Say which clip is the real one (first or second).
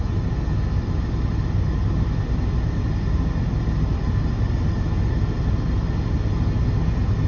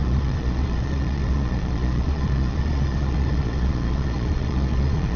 first